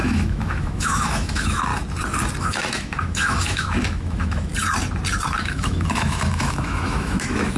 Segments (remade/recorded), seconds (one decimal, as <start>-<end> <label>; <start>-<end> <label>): 0.0-1.7 remade; 1.7-2.4 recorded; 2.4-4.5 remade; 4.5-5.4 recorded; 5.4-7.6 remade